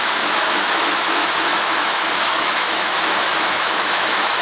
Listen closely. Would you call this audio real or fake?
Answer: fake